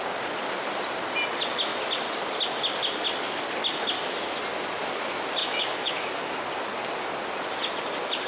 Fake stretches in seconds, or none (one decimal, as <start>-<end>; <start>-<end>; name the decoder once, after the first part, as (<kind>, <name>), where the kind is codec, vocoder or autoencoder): 5.4-6.3 (autoencoder, DAC-VAE)